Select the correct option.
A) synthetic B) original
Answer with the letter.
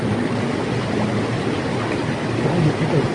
B